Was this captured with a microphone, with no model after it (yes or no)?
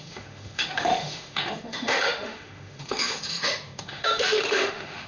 no